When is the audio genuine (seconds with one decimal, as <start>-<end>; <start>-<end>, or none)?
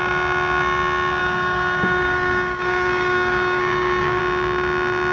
0.0-1.2; 4.2-5.1